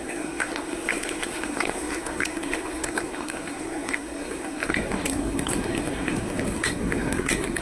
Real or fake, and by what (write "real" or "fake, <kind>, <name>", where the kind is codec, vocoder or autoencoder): fake, codec, SNAC